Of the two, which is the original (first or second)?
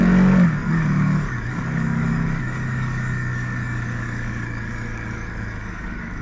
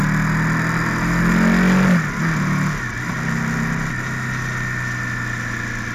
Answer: second